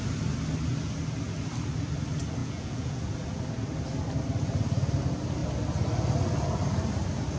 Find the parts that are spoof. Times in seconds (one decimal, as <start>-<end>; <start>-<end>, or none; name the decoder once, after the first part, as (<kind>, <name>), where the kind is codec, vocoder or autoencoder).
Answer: 2.4-3.0 (vocoder, Vocos)